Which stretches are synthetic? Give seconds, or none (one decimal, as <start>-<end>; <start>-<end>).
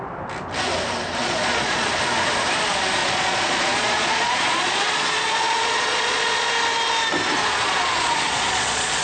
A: 1.2-2.0; 3.0-6.5; 7.4-9.0